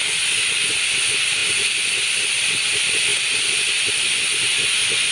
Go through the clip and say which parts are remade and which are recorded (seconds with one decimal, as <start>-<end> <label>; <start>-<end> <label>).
0.0-5.1 recorded